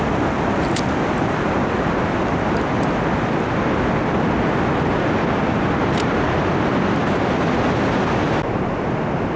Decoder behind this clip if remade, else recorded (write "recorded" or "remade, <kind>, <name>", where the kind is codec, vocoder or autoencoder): recorded